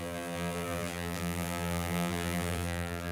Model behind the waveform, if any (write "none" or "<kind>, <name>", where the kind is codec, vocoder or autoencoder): vocoder, BigVGAN v2